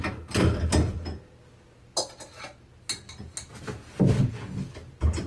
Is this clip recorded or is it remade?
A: recorded